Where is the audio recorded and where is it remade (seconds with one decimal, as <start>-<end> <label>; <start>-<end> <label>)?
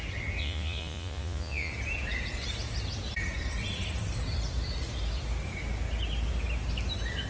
0.0-0.4 recorded; 0.4-1.7 remade; 1.7-7.3 recorded